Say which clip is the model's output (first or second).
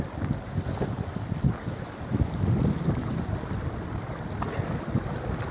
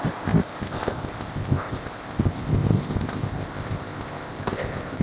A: second